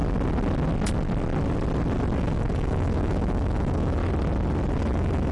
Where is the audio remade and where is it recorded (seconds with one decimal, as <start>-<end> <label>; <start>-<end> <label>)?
0.0-2.2 recorded; 2.2-4.0 remade; 4.0-4.7 recorded; 4.7-5.3 remade